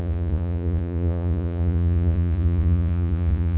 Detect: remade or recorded remade